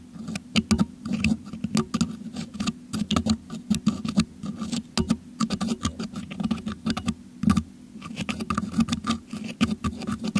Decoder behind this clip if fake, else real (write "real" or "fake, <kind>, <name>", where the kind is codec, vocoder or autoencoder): real